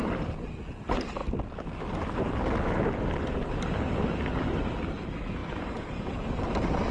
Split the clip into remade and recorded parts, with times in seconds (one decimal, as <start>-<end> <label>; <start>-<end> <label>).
0.0-5.4 recorded; 5.4-6.0 remade; 6.0-6.9 recorded